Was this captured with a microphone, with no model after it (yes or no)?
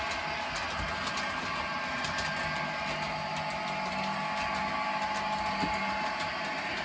yes